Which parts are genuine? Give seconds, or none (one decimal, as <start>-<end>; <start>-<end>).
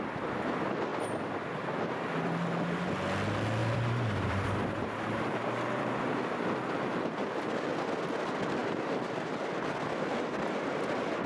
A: 0.0-0.9; 1.4-3.6; 4.8-8.6; 9.2-11.3